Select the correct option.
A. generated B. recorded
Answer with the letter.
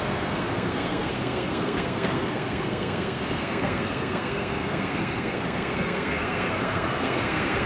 A